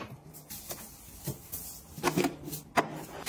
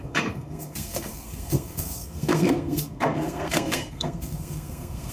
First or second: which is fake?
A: second